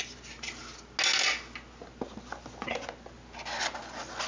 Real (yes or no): yes